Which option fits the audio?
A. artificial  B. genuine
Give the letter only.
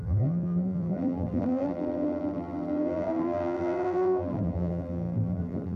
A